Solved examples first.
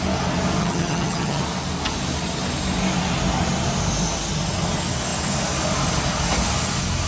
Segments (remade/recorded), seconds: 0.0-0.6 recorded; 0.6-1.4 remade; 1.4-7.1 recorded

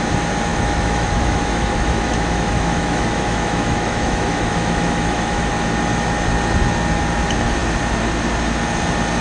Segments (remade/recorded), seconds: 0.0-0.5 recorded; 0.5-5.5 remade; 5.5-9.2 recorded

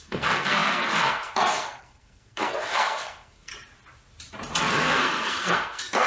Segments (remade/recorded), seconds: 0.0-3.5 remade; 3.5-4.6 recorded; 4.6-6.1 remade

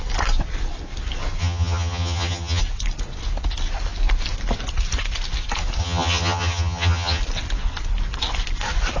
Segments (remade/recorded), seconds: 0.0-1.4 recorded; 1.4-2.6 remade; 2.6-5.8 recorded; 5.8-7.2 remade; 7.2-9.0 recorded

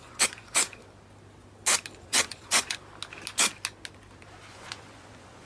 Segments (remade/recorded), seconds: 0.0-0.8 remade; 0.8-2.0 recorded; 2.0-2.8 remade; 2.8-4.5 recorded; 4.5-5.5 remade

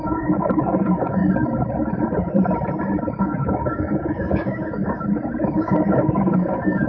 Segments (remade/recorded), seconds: 0.0-1.2 remade; 1.2-3.2 recorded; 3.2-4.8 remade; 4.8-5.4 recorded; 5.4-6.9 remade

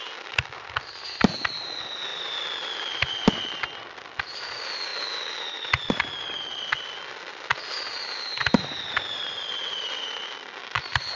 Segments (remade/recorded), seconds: 0.0-2.1 recorded; 2.1-4.2 remade; 4.2-11.2 recorded

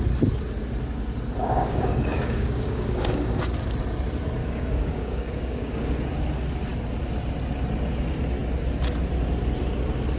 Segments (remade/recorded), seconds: 0.0-1.4 recorded; 1.4-3.4 remade; 3.4-4.4 recorded; 4.4-5.9 remade; 5.9-10.2 recorded